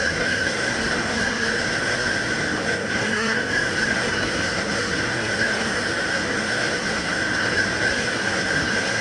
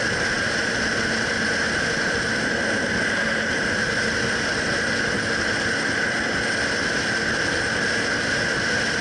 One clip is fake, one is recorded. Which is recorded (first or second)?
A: second